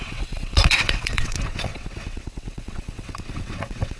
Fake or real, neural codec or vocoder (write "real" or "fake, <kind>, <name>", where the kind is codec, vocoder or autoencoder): fake, vocoder, WaveNeXt